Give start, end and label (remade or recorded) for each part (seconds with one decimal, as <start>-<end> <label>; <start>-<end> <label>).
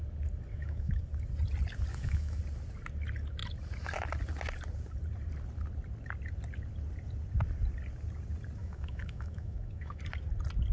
0.0-0.5 recorded; 0.5-1.0 remade; 1.0-1.9 recorded; 1.9-2.4 remade; 2.4-8.6 recorded; 8.6-10.0 remade; 10.0-10.7 recorded